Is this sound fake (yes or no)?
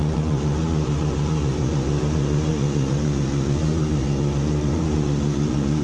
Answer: yes